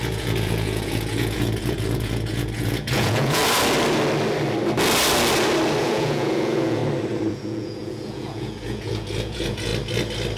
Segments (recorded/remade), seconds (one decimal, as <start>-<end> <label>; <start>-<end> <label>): 0.0-3.4 remade; 3.4-5.8 recorded; 5.8-6.8 remade; 6.8-7.3 recorded; 7.3-9.7 remade; 9.7-10.4 recorded